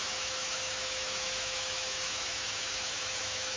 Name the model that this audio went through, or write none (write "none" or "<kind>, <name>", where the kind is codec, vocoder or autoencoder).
autoencoder, DAC-VAE